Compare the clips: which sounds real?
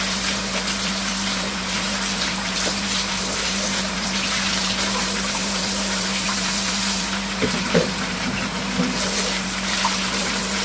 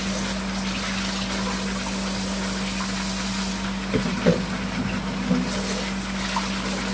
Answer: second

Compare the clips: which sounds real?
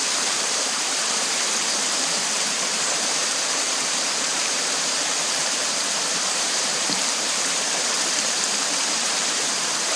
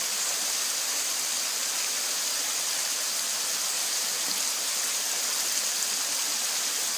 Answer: second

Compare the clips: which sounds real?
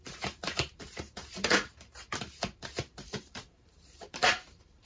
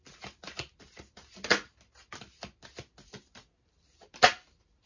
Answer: second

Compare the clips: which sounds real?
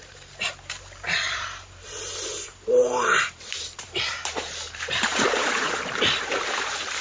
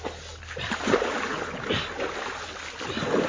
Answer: second